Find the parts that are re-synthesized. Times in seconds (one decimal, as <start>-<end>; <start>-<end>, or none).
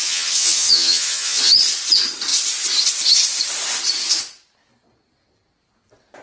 0.0-1.5